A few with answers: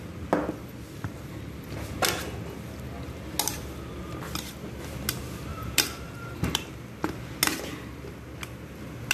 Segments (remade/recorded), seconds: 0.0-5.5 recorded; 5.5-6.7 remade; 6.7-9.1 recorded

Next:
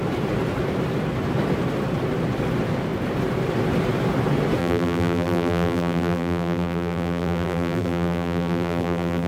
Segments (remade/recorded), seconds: 0.0-4.6 recorded; 4.6-9.3 remade